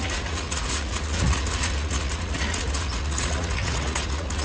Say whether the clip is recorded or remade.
remade